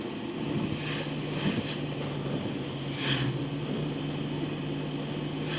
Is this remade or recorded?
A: recorded